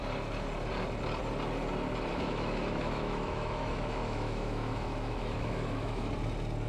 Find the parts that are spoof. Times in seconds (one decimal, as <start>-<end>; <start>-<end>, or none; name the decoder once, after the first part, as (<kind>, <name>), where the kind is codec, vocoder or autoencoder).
2.1-6.1 (autoencoder, DAC-VAE)

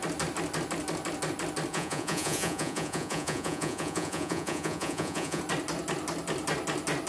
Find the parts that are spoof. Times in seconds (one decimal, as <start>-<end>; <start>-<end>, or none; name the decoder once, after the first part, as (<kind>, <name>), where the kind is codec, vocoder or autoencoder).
1.7-5.4 (vocoder, Vocos)

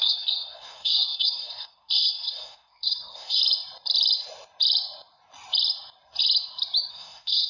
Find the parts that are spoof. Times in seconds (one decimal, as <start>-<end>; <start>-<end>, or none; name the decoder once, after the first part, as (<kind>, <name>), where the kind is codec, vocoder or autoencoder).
0.0-3.4 (codec, SNAC); 6.9-7.5

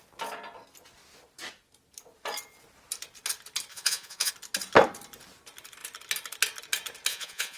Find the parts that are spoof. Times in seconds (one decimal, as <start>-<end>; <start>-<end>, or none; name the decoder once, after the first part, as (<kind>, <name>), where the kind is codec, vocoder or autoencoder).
3.7-4.3 (vocoder, Vocos); 7.1-7.6

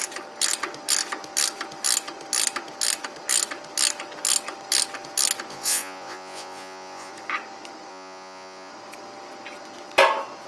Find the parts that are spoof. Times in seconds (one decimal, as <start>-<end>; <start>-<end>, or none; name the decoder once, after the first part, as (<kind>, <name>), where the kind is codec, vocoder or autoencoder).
5.5-7.1 (vocoder, Vocos); 7.9-8.7

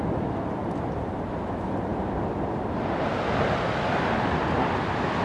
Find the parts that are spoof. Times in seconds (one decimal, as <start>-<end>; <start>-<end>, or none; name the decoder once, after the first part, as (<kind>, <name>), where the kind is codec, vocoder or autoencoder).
none